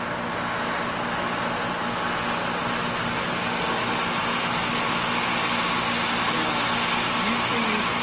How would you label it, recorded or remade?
recorded